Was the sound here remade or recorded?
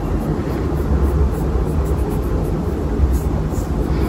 recorded